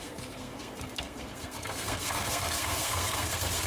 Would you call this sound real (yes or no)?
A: no